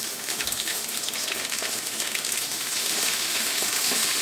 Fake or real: fake